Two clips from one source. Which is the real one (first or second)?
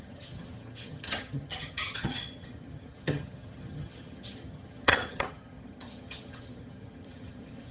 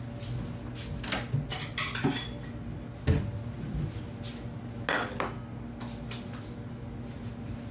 second